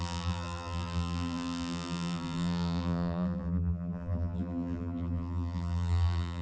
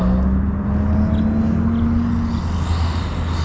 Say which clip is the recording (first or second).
second